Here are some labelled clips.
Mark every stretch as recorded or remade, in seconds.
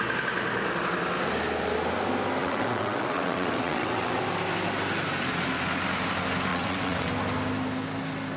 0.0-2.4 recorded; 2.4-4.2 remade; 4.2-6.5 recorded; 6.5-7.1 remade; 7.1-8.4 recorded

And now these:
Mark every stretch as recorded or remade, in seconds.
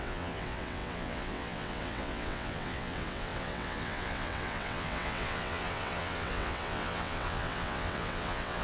0.0-8.6 remade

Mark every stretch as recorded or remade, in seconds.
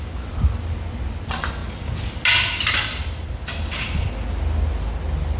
0.0-5.4 recorded